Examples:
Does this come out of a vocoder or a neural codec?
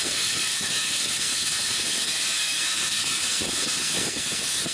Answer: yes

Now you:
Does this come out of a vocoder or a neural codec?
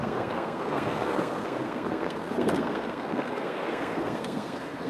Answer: yes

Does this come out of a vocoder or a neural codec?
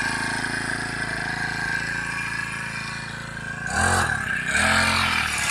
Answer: no